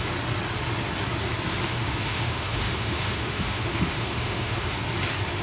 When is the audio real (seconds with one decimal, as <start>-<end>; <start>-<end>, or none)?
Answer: 0.0-1.6; 4.8-5.4